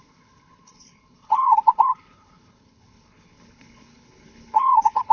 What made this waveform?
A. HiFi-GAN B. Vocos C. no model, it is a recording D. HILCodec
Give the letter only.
D